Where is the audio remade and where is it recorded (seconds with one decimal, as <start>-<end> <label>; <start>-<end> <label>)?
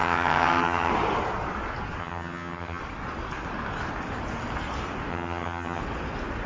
0.0-0.9 remade; 0.9-2.0 recorded; 2.0-2.8 remade; 2.8-5.1 recorded; 5.1-5.8 remade; 5.8-6.5 recorded